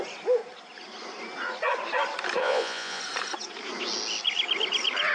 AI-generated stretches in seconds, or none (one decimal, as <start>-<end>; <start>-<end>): 2.4-3.0